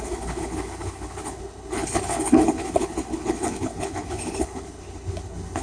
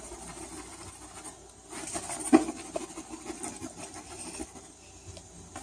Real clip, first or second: second